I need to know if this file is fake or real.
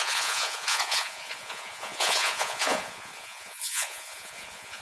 fake